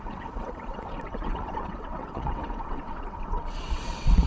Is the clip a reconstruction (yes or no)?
yes